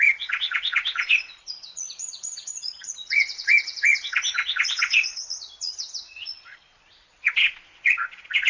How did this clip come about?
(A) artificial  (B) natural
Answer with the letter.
A